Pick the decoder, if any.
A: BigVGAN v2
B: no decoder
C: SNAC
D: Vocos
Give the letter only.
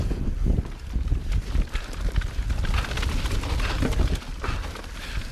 B